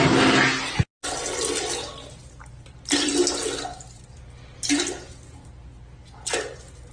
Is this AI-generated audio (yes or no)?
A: no